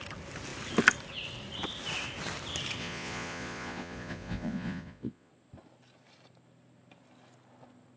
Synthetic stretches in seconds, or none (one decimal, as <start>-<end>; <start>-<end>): 2.8-5.3